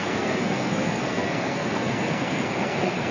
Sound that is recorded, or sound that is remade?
remade